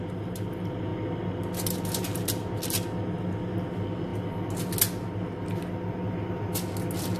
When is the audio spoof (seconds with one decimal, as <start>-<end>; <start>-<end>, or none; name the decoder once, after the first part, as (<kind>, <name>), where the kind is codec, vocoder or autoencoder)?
none